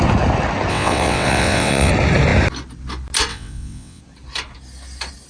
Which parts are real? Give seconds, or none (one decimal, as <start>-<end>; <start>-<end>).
0.0-0.7; 1.9-3.3; 4.0-5.3